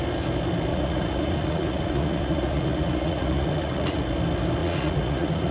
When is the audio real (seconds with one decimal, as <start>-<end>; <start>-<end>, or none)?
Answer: 0.0-0.7; 4.0-4.6

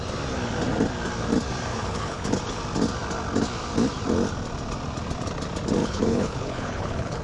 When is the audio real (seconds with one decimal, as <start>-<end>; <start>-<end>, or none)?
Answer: 0.0-1.7; 2.6-5.8

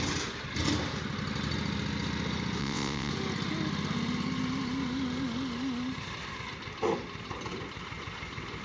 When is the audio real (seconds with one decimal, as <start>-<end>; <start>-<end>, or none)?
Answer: 0.0-2.6; 3.1-8.6

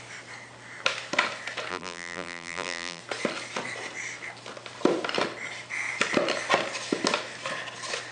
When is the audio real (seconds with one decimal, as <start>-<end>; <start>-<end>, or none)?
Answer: 0.0-1.7; 3.0-8.1

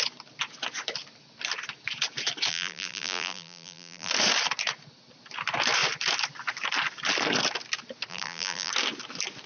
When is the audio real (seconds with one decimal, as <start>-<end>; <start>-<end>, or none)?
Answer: 0.0-2.5; 4.1-8.1; 8.7-9.5

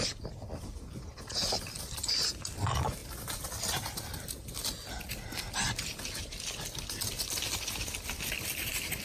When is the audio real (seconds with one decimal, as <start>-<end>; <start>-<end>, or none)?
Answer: 0.0-9.0

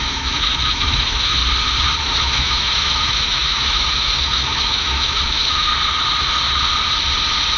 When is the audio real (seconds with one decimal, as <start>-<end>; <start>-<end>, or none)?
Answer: 1.4-2.0; 5.7-7.6

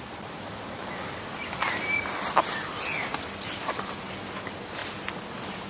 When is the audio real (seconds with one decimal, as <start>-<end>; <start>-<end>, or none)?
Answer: 0.0-5.7